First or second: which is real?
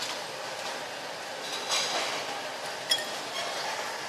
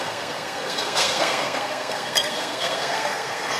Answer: first